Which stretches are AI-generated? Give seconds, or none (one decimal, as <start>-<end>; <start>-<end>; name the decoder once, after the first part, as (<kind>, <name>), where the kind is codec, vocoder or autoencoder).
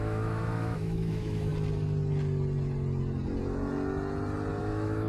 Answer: 0.0-1.5 (autoencoder, DAC-VAE); 4.6-5.1